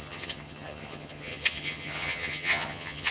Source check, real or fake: fake